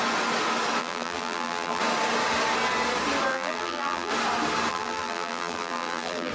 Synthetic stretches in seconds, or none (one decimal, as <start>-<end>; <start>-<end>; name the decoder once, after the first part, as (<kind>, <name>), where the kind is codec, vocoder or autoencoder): 0.8-1.8 (vocoder, BigVGAN v2); 3.3-4.1; 4.7-6.3